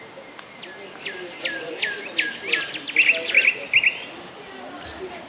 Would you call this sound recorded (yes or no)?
yes